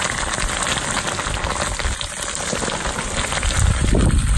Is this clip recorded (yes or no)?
yes